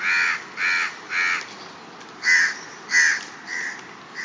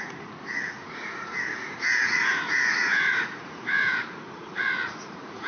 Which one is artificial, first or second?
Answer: second